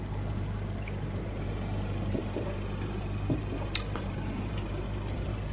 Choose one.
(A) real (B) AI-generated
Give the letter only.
B